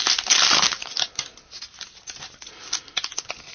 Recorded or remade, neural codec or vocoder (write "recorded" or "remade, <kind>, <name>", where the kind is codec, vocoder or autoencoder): recorded